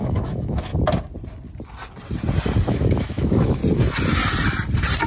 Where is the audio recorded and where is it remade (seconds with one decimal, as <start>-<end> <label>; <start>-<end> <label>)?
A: 0.0-0.7 remade; 0.7-2.7 recorded; 2.7-3.6 remade; 3.6-5.1 recorded